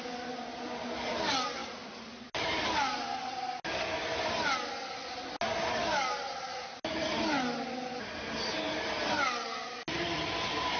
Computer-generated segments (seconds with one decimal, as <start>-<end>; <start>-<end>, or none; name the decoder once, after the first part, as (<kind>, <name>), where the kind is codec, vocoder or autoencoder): none